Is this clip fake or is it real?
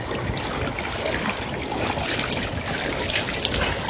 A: real